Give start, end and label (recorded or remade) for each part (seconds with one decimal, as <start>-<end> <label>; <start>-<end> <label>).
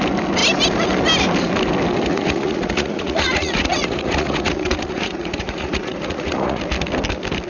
0.0-2.1 recorded; 2.1-6.6 remade; 6.6-7.5 recorded